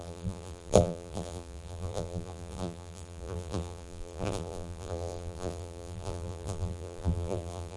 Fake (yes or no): yes